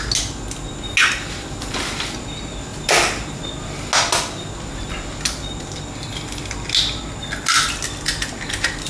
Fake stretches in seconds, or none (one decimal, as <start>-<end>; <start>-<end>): 2.7-3.4